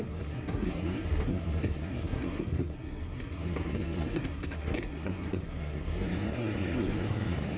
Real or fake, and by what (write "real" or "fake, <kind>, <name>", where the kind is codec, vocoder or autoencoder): fake, codec, SNAC